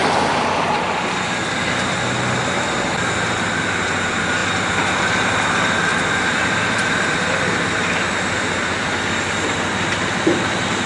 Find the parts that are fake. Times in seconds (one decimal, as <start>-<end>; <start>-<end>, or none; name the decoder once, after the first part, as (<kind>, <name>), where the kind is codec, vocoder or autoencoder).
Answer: none